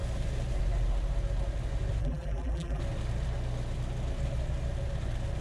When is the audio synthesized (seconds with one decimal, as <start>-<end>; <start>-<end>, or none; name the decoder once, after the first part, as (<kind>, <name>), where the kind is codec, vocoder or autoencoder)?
2.0-2.8 (vocoder, BigVGAN v2)